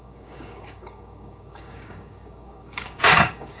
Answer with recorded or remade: remade